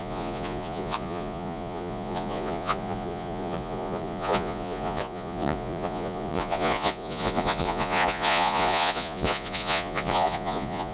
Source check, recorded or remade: remade